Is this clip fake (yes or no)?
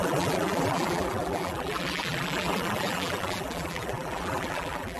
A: yes